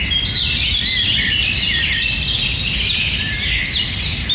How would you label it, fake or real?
real